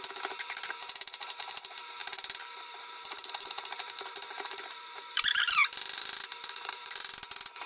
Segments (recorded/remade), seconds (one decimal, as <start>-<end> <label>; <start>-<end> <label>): 0.0-7.7 remade